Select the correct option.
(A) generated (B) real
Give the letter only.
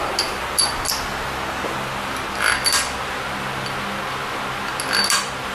B